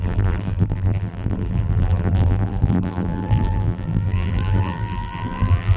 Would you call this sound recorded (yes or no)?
no